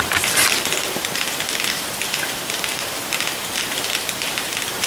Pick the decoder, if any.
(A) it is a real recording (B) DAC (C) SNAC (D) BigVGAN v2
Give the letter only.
D